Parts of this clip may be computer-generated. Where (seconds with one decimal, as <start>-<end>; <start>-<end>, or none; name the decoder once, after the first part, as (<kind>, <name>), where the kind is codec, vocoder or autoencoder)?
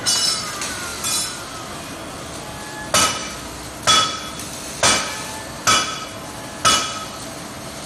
none